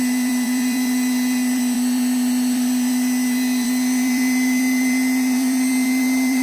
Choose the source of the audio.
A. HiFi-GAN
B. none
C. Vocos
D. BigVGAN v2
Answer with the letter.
D